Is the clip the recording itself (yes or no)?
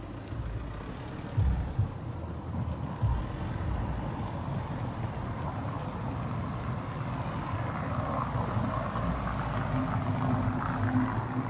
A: yes